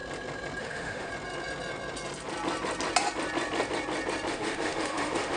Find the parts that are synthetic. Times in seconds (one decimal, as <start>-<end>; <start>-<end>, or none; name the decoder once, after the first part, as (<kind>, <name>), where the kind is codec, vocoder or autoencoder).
0.6-1.1 (autoencoder, DAC-VAE); 4.3-5.4